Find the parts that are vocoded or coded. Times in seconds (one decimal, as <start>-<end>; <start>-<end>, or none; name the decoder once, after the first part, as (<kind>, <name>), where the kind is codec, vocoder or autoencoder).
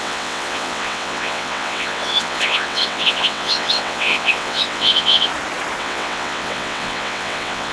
0.0-5.3 (vocoder, WaveNeXt); 5.8-7.7